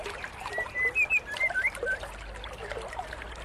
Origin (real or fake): real